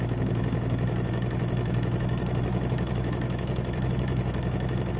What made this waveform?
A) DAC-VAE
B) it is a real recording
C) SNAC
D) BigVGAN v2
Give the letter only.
A